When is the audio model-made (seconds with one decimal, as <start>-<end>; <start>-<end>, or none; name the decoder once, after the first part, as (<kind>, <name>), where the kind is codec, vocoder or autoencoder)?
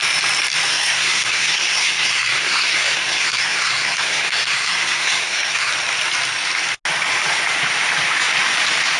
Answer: 0.7-5.7 (codec, SNAC)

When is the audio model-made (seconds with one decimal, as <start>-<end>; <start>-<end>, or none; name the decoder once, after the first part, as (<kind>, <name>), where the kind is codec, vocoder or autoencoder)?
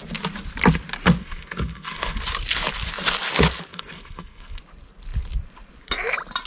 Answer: 1.2-2.2 (codec, SNAC); 3.7-4.6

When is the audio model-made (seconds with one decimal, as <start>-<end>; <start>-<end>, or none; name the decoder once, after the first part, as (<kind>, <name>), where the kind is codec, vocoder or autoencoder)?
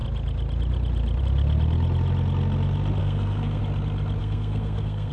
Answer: 3.0-3.6 (codec, SNAC); 4.2-5.1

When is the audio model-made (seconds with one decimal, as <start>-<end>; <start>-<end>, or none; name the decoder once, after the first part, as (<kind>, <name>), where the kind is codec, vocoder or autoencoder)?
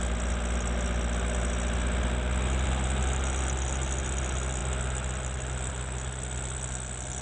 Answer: none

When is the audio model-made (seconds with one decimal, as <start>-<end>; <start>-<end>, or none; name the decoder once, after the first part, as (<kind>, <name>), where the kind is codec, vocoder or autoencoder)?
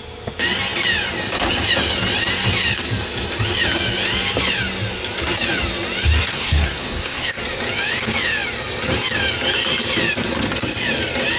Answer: 6.3-7.4 (codec, SNAC)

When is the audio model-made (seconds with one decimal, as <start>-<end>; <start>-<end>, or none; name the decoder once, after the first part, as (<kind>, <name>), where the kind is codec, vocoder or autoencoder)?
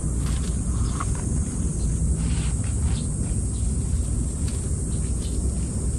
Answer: none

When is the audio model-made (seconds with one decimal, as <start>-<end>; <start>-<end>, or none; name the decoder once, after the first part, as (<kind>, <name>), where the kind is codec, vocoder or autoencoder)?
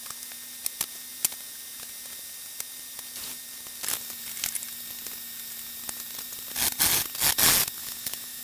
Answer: 7.8-8.4 (autoencoder, DAC-VAE)